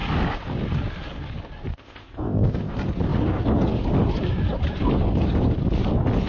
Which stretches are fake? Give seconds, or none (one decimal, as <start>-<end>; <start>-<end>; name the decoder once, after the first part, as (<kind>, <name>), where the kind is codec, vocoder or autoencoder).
1.7-2.7 (codec, ZipCodec)